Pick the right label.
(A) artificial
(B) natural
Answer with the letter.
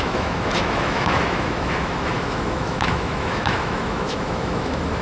A